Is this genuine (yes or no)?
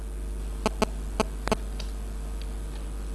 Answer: yes